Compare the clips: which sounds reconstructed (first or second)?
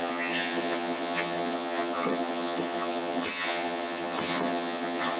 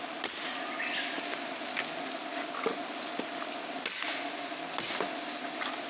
first